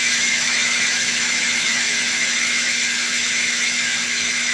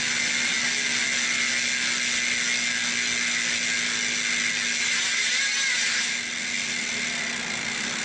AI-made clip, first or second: first